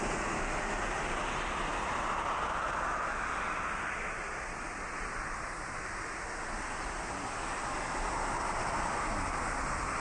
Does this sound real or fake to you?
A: real